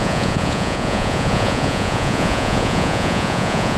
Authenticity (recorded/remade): remade